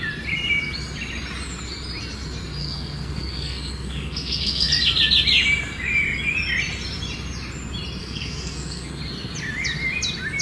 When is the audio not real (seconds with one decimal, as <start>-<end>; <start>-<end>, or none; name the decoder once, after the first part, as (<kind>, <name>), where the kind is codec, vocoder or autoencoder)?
2.6-4.7 (codec, SNAC); 8.0-9.0